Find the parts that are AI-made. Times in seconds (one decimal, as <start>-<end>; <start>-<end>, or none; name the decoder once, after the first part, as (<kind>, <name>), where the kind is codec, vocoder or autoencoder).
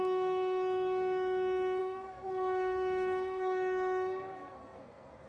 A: 0.0-5.3 (codec, SNAC)